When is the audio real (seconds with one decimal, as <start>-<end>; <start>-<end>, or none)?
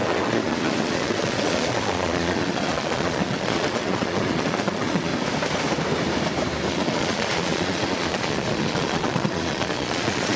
5.1-6.7